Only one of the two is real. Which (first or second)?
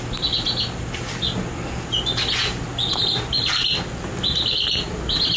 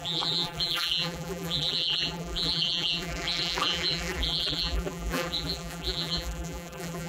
first